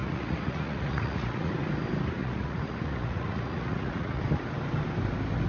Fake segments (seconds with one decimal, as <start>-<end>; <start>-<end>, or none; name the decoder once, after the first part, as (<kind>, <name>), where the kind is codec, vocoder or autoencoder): 0.0-1.5 (vocoder, Vocos); 2.2-4.2

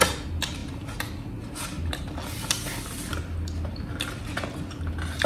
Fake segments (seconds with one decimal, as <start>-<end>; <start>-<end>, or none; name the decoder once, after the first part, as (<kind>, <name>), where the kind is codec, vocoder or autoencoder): none

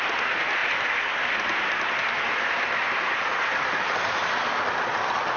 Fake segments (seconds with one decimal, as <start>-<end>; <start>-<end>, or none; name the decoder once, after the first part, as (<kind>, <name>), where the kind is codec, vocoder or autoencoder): none

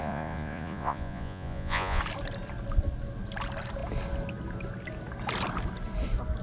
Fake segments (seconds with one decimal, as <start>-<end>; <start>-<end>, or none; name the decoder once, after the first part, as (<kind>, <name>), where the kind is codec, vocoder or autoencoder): 0.0-2.0 (vocoder, Vocos)

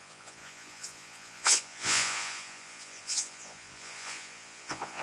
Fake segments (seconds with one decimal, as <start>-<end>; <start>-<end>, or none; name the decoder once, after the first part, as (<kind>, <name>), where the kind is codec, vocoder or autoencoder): 0.0-5.0 (vocoder, Vocos)

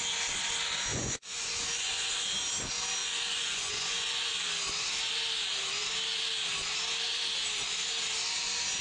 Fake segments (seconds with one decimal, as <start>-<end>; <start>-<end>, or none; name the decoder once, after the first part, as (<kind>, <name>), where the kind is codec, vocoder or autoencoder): 0.9-2.1 (vocoder, Vocos); 3.0-4.3

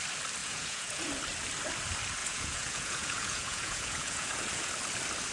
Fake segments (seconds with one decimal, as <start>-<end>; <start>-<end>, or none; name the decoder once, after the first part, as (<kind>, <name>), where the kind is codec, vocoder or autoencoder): 0.4-1.1 (vocoder, Vocos); 2.2-4.7

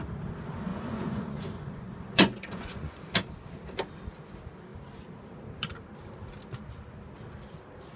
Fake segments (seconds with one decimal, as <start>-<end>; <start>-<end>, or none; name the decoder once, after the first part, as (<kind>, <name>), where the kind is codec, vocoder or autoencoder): 0.7-3.0 (vocoder, Vocos)